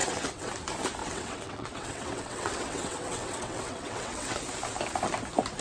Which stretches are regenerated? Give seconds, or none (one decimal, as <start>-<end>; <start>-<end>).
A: 0.0-0.5; 1.0-4.4